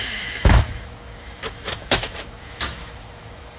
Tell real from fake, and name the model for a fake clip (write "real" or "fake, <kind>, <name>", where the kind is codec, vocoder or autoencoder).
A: fake, autoencoder, DAC-VAE